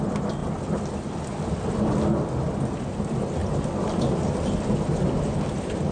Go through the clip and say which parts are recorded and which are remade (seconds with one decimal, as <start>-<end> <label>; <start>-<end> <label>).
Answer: 0.0-5.9 recorded